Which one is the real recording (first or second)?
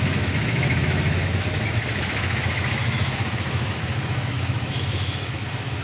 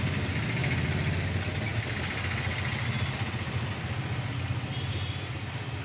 second